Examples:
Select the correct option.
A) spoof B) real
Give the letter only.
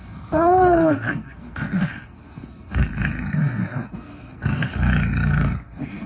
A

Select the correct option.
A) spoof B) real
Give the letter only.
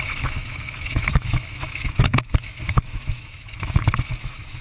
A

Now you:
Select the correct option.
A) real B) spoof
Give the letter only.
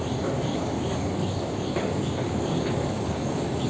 B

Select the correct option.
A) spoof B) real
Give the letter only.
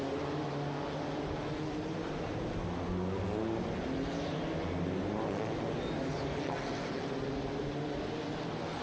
B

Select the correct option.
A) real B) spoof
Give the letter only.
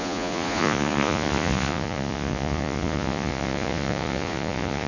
B